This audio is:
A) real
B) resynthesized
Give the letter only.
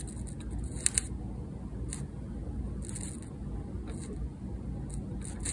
A